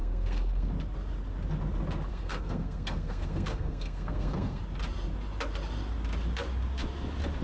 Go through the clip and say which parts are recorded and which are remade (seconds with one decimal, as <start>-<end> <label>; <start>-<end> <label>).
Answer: 0.0-0.7 remade; 0.7-2.1 recorded; 2.1-4.6 remade; 4.6-7.4 recorded